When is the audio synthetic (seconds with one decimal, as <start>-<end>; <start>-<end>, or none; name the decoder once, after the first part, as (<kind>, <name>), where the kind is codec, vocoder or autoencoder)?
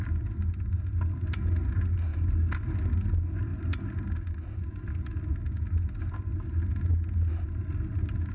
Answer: none